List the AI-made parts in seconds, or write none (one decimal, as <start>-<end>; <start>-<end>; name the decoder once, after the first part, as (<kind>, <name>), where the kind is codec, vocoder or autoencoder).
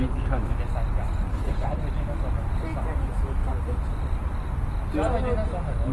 1.3-1.8 (codec, HILCodec)